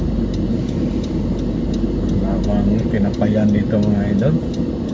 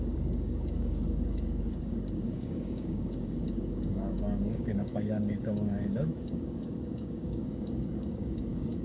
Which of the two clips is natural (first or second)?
first